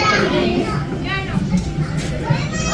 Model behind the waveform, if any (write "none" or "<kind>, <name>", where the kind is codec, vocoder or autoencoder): none